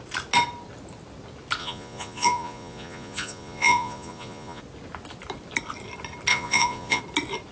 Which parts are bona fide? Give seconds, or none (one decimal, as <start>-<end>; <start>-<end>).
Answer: 0.0-1.6; 4.6-6.3; 7.0-7.5